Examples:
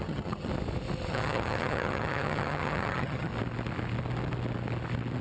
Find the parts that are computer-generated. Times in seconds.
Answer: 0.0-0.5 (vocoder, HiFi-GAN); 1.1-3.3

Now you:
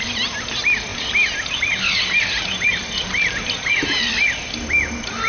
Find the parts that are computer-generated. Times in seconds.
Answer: none